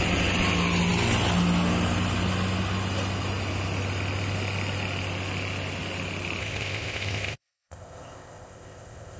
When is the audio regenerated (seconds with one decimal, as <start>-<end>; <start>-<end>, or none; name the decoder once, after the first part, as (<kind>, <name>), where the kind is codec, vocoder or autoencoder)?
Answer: 6.4-9.2 (codec, ZipCodec)